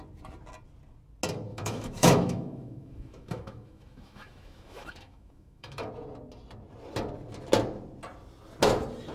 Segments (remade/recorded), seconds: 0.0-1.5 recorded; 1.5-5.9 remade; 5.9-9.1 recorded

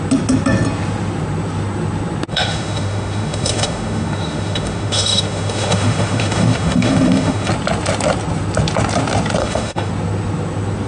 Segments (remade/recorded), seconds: 0.0-2.3 recorded; 2.3-7.5 remade; 7.5-9.4 recorded; 9.4-9.9 remade; 9.9-10.9 recorded

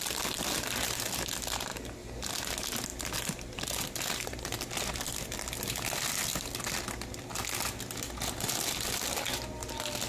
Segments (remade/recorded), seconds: 0.0-10.1 recorded

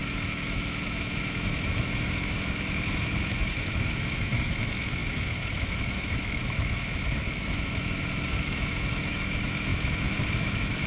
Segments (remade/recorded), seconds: 0.0-10.9 remade

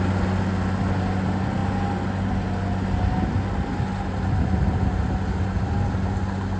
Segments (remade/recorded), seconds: 0.0-6.6 recorded

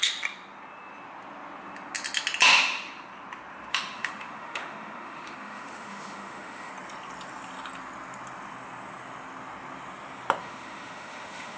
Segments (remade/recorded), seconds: 0.0-3.7 recorded; 3.7-6.7 remade; 6.7-10.4 recorded; 10.4-11.6 remade

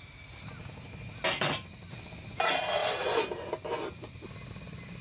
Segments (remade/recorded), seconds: 0.0-5.0 recorded